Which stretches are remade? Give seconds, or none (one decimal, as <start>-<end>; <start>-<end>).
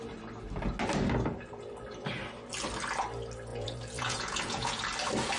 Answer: 3.5-4.8